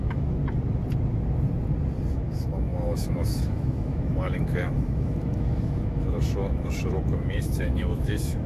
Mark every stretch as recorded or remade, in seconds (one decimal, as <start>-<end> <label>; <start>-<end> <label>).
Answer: 0.0-0.4 remade; 0.4-2.1 recorded; 2.1-8.5 remade